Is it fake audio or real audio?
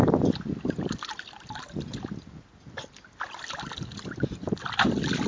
real